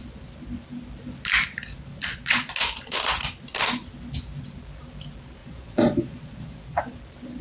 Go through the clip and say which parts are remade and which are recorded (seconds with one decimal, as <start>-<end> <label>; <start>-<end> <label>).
0.0-1.9 recorded; 1.9-2.5 remade; 2.5-5.4 recorded; 5.4-6.8 remade; 6.8-7.4 recorded